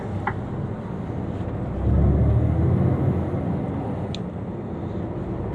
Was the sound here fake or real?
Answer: real